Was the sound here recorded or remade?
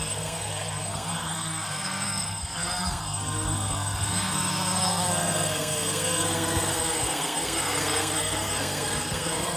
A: remade